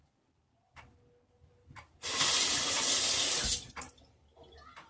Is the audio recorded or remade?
recorded